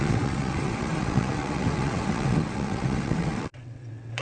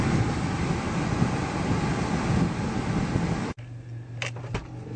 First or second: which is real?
second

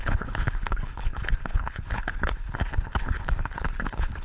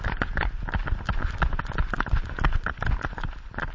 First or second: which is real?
second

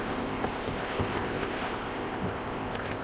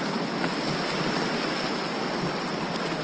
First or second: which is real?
second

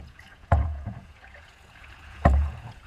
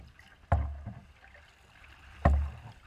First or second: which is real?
second